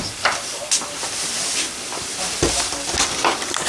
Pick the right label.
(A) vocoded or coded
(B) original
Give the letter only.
B